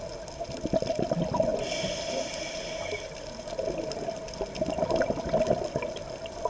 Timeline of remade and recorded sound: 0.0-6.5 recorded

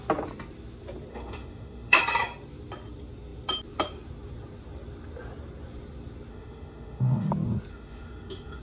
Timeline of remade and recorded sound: 0.0-1.1 recorded; 1.1-2.0 remade; 2.0-6.3 recorded; 6.3-7.3 remade; 7.3-7.7 recorded; 7.7-8.6 remade

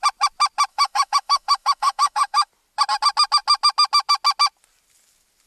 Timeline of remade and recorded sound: 0.0-0.7 recorded; 0.7-2.5 remade; 2.5-5.5 recorded

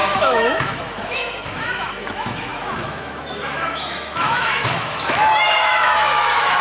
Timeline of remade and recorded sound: 0.0-6.6 remade

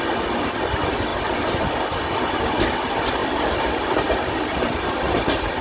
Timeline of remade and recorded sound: 0.0-5.6 recorded

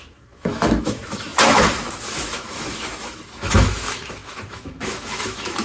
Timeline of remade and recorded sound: 0.0-5.6 remade